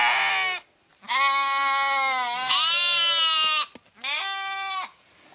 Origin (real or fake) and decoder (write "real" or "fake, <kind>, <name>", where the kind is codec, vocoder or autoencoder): real